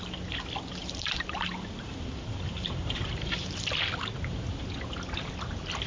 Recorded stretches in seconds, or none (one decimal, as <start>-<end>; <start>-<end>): 0.0-0.8; 3.6-5.9